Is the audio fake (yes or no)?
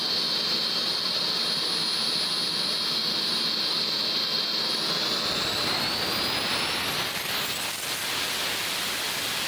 no